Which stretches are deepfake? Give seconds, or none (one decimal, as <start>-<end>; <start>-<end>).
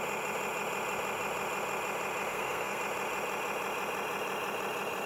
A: 2.3-2.8